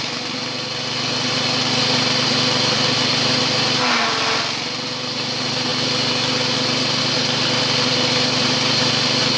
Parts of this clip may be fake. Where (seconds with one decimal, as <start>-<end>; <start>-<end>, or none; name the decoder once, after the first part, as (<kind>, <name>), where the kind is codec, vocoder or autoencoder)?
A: none